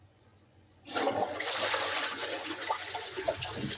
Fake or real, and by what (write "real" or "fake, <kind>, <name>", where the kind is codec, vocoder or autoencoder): fake, vocoder, Vocos